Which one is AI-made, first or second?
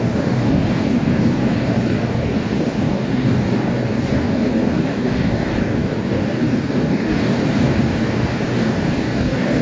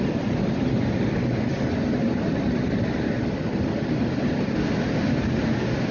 first